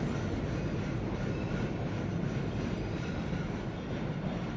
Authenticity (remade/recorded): recorded